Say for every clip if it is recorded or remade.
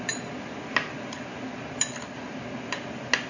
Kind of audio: recorded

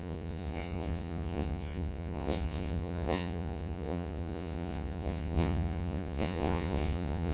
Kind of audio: remade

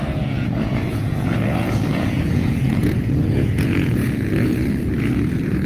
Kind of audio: remade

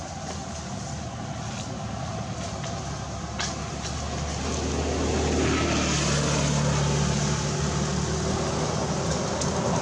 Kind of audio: recorded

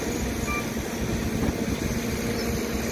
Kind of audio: recorded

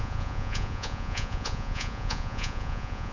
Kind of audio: remade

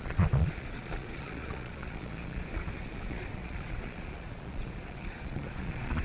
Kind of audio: remade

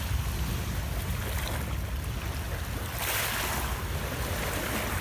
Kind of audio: recorded